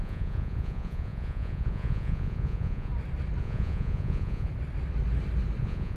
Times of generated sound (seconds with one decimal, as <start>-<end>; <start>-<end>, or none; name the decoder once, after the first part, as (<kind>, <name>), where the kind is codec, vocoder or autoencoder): 0.0-2.9 (vocoder, Vocos); 3.4-4.5; 5.6-6.0